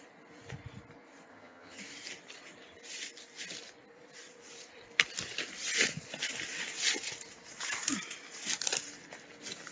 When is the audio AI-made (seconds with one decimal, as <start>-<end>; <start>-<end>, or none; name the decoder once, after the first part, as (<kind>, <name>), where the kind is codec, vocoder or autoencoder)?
1.3-1.8 (vocoder, HiFi-GAN)